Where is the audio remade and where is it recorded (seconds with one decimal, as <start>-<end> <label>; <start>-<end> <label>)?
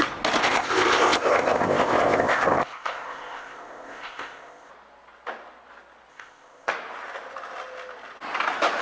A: 0.0-0.4 recorded; 0.4-4.7 remade; 4.7-6.1 recorded; 6.1-6.7 remade; 6.7-8.8 recorded